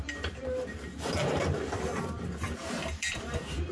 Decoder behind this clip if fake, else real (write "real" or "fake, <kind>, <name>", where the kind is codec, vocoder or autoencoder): fake, vocoder, BigVGAN v2